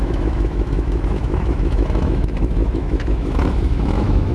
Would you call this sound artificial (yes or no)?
yes